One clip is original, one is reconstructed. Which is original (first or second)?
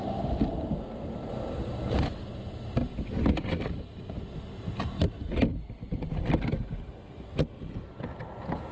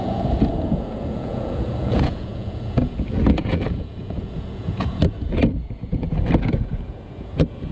first